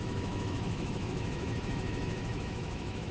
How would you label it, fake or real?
fake